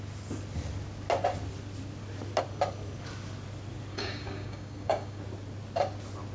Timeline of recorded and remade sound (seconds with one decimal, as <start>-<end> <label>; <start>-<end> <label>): 0.0-3.9 recorded; 3.9-5.2 remade; 5.2-6.3 recorded